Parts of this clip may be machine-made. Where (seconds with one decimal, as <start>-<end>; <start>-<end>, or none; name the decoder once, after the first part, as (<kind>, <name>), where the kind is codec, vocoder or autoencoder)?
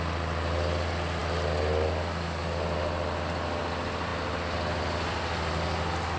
none